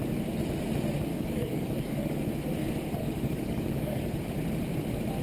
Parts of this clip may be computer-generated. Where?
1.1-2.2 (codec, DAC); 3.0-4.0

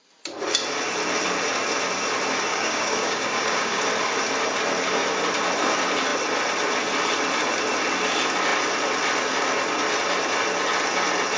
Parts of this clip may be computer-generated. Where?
2.5-3.8 (codec, DAC)

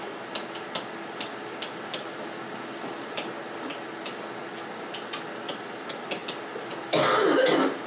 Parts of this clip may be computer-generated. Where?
none

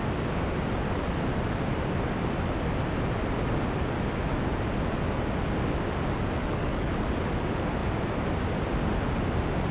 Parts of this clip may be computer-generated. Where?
6.4-6.9 (codec, DAC)